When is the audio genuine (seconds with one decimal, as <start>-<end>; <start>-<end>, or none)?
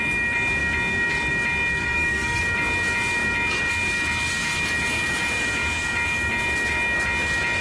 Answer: 0.0-1.8; 2.4-7.6